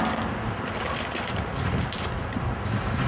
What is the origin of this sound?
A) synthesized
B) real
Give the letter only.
B